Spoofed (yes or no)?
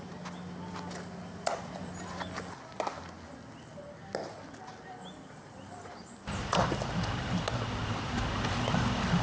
no